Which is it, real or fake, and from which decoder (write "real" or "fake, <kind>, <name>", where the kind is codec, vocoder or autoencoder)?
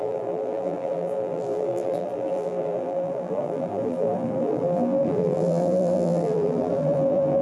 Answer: fake, vocoder, BigVGAN v2